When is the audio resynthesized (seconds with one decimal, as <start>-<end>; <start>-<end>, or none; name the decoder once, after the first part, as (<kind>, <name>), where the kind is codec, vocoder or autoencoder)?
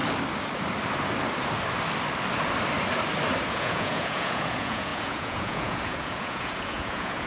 3.5-7.3 (vocoder, Vocos)